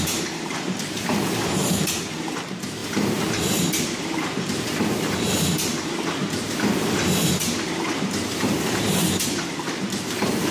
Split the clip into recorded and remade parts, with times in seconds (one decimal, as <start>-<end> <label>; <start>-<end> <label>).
0.0-10.5 remade